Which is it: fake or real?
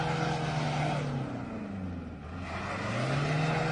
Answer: real